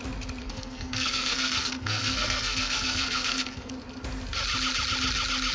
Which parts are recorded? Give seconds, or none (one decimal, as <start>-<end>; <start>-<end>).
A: 0.0-0.4; 3.7-5.5